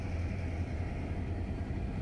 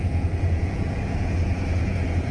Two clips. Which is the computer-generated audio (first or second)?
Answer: second